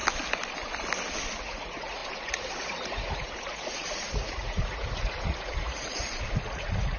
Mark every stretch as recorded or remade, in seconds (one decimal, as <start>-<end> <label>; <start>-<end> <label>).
0.0-1.4 recorded; 1.4-7.0 remade